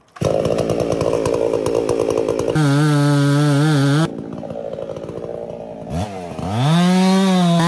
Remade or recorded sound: recorded